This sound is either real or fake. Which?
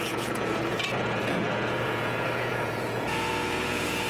fake